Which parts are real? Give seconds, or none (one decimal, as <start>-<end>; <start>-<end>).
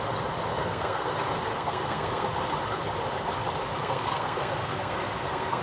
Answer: 0.0-0.5; 1.1-1.5; 2.3-3.8